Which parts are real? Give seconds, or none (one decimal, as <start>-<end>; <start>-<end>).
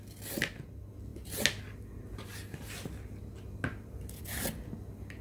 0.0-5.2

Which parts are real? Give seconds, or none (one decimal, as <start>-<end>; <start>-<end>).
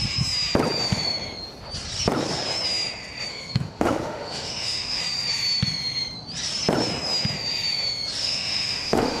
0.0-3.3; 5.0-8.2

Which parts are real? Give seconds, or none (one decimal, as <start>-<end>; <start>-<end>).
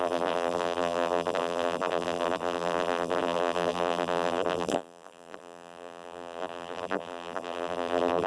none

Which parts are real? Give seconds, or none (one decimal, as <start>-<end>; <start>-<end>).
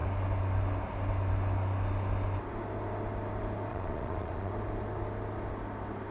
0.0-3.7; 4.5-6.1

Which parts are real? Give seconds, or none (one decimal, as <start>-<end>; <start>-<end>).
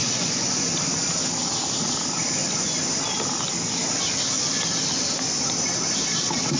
0.6-2.4; 2.9-6.6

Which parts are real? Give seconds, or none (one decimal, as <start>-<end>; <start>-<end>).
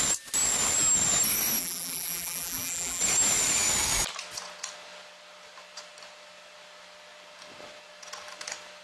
0.0-1.6; 3.0-8.8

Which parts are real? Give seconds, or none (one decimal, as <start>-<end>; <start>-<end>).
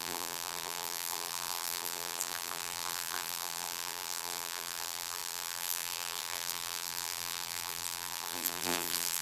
none